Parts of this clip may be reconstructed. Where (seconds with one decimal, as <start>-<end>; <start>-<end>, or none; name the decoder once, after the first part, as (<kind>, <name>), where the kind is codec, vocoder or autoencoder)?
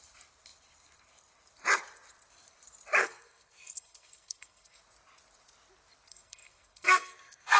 3.0-4.8 (codec, SNAC); 6.1-7.6